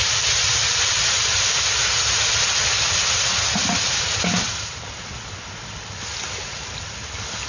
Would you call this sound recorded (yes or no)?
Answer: yes